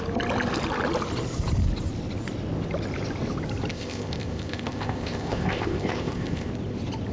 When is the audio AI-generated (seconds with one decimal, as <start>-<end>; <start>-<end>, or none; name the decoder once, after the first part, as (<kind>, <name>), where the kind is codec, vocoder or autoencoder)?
3.7-6.5 (codec, ZipCodec)